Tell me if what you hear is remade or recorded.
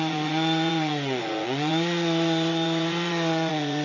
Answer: remade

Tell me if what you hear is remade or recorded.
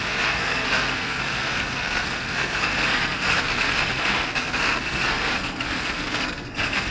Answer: remade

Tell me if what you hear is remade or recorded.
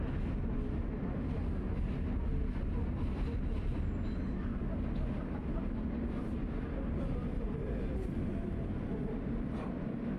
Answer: recorded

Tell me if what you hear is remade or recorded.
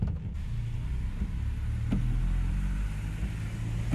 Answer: recorded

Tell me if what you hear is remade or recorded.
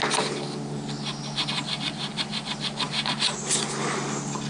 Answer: recorded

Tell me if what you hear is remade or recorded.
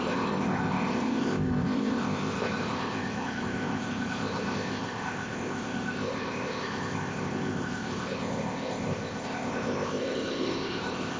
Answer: remade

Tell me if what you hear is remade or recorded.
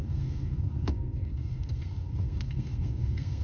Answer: remade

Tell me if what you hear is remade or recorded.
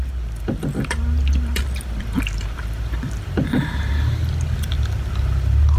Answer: remade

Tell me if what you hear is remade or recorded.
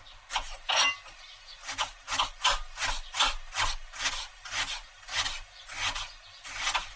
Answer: recorded